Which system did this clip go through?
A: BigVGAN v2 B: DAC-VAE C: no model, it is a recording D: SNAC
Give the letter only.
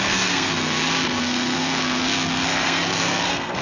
D